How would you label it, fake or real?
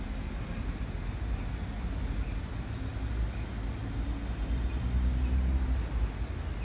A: real